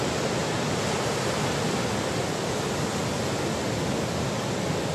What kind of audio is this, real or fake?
real